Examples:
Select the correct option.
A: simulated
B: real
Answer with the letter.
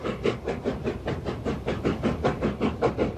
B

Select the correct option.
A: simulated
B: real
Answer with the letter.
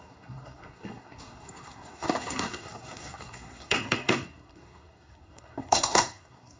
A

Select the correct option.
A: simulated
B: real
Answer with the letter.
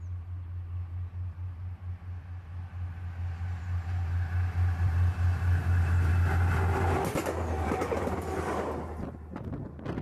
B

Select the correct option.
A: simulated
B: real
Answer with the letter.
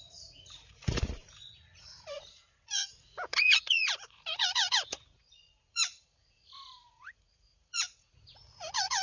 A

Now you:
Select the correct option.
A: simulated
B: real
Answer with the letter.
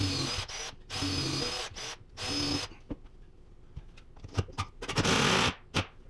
B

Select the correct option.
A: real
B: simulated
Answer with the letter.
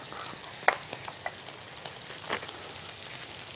A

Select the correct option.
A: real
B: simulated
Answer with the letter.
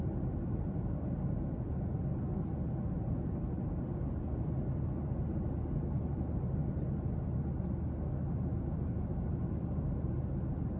A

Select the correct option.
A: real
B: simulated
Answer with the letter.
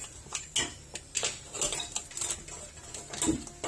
A